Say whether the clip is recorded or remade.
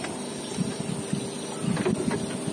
recorded